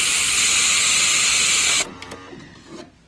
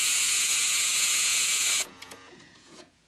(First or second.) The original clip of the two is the first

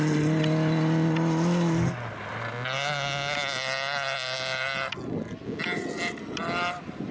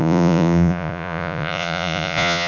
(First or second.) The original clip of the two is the first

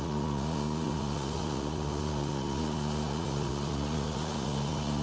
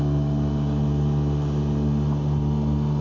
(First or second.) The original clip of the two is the second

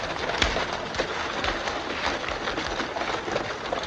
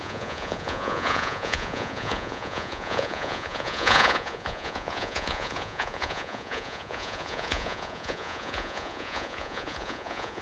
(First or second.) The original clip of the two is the first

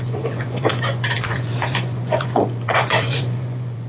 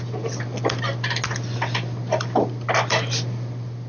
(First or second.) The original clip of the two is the second